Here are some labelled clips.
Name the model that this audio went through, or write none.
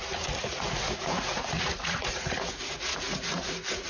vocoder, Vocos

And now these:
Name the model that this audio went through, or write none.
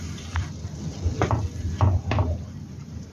none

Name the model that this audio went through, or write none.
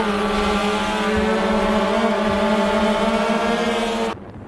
none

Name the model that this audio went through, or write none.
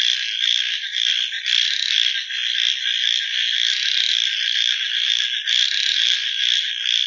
none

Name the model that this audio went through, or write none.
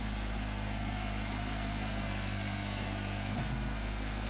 codec, SNAC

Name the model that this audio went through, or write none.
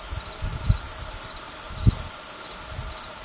none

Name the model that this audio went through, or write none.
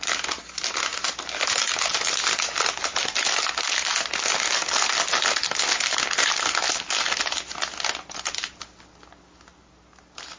none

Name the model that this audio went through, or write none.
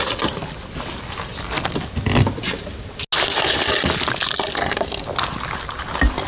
none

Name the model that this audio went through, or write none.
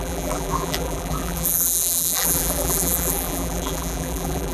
vocoder, BigVGAN v2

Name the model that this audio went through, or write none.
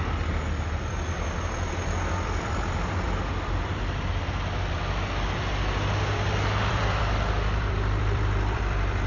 vocoder, BigVGAN v2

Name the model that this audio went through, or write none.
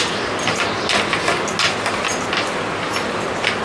none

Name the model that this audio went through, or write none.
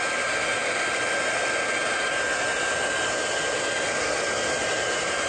none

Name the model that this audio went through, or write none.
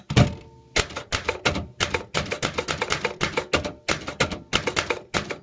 none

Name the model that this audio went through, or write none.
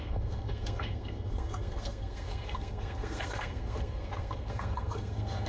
codec, SNAC